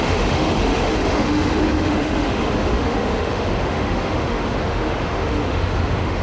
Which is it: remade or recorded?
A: remade